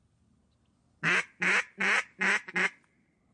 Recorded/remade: recorded